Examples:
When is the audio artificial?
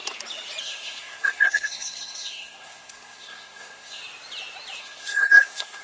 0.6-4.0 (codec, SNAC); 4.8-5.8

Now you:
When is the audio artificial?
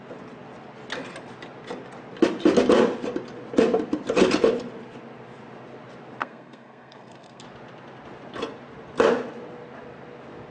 6.2-7.4 (codec, SNAC)